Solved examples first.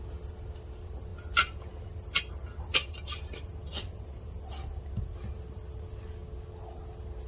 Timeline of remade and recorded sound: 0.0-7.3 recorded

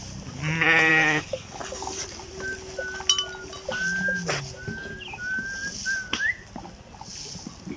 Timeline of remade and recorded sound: 0.0-0.9 recorded; 0.9-2.0 remade; 2.0-7.8 recorded